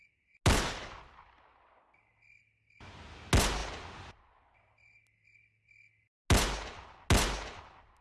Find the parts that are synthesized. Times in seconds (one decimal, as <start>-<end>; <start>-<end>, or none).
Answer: none